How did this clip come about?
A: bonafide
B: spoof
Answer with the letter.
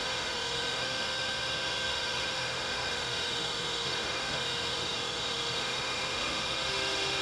B